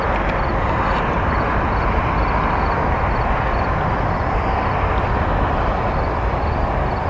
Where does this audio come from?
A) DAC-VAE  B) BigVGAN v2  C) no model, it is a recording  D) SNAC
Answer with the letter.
C